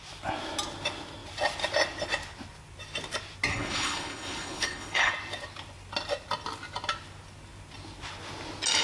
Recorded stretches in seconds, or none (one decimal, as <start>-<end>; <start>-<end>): 0.0-3.5; 5.1-8.8